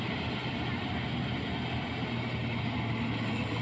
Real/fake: real